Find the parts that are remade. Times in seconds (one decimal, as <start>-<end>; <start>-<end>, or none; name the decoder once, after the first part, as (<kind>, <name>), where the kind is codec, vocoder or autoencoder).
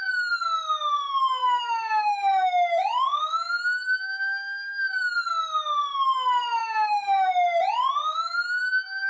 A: 1.4-5.1 (autoencoder, DAC-VAE); 6.6-7.3; 8.1-8.6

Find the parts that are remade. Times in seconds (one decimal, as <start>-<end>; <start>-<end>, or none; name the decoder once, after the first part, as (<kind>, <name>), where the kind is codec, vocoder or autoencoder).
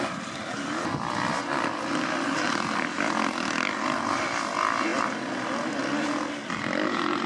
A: none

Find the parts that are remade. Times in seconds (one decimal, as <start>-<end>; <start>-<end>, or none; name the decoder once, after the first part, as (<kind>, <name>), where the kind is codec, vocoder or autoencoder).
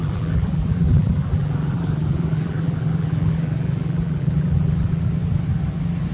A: 0.0-5.2 (vocoder, BigVGAN v2)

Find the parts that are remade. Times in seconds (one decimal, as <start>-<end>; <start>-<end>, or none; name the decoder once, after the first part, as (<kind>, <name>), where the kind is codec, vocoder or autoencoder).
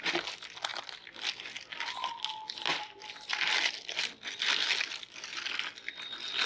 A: none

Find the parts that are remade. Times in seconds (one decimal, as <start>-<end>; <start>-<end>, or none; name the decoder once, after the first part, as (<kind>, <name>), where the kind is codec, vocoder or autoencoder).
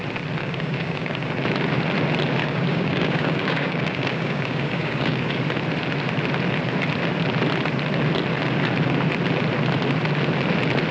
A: 0.4-1.3 (codec, DAC); 2.4-5.3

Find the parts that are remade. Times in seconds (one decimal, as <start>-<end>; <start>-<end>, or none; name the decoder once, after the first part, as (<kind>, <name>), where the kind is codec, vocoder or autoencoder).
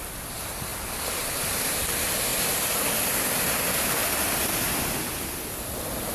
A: none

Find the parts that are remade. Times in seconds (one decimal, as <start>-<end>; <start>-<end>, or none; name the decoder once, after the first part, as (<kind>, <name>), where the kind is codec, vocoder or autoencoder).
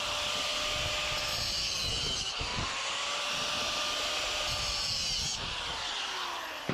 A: none